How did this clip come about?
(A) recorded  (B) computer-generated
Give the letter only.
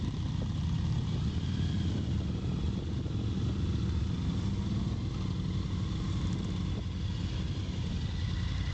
A